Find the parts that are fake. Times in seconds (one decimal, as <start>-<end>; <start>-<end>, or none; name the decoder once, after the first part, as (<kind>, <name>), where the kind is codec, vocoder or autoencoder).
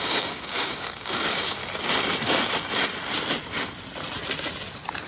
0.0-1.6 (codec, DAC)